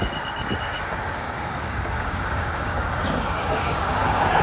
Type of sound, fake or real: fake